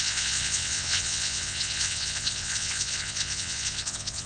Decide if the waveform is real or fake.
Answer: fake